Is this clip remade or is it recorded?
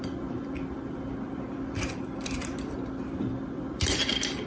remade